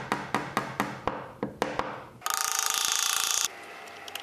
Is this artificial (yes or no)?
no